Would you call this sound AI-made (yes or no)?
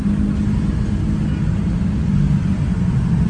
no